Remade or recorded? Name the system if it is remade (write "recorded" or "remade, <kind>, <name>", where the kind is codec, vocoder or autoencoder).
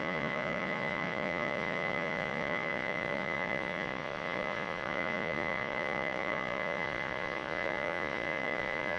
remade, vocoder, Vocos